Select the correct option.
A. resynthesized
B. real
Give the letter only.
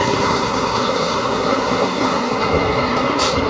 A